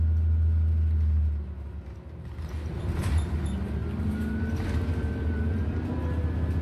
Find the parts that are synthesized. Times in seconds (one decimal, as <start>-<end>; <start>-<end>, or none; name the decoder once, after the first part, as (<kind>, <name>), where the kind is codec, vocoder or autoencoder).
none